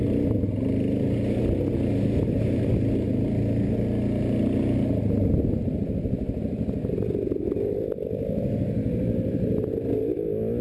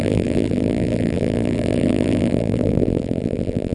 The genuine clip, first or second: first